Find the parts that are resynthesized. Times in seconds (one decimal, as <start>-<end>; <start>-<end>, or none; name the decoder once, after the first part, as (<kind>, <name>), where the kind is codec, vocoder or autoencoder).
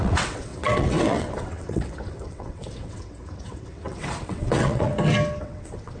0.0-4.9 (vocoder, WaveNeXt); 5.4-6.0